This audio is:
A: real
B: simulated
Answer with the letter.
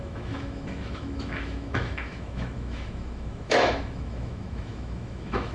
B